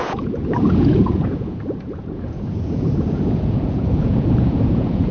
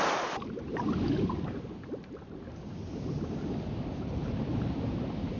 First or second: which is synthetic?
first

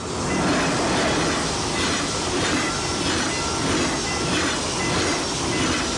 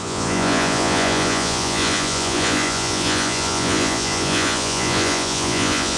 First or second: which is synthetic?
second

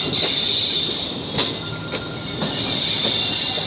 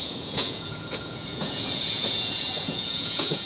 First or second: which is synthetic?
second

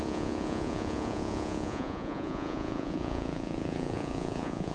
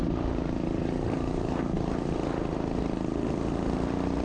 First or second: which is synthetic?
first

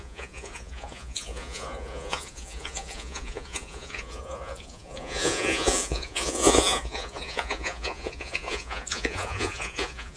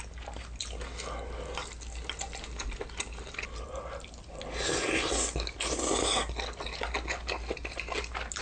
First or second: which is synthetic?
first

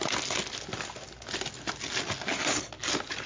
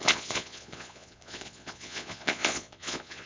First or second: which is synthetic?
second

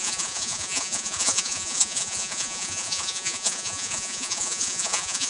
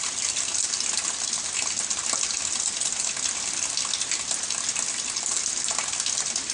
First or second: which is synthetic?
first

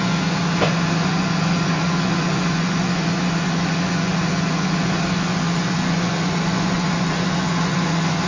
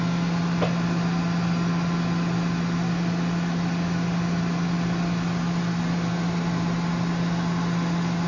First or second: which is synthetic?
first